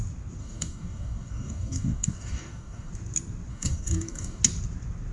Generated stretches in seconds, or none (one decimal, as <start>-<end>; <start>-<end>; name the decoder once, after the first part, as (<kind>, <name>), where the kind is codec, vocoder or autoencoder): 0.4-2.9 (codec, DAC); 3.5-4.4

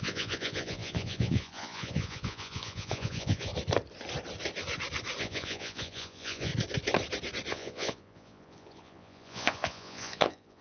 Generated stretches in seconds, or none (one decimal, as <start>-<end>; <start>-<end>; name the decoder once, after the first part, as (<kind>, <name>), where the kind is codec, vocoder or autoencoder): 0.0-3.5 (vocoder, Vocos); 5.2-6.5; 7.5-10.6

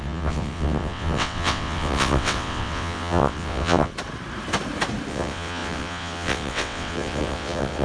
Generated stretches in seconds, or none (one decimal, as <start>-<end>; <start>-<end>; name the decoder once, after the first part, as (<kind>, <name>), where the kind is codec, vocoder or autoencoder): 0.0-3.9 (vocoder, WaveNeXt); 5.1-7.8